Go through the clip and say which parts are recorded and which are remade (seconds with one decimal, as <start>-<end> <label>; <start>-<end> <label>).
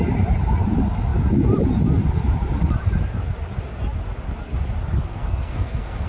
0.0-5.1 recorded; 5.1-6.1 remade